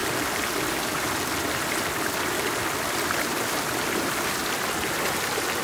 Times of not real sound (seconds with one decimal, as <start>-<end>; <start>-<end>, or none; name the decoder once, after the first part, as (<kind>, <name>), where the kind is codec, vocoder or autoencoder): none